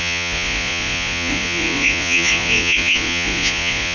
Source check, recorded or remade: remade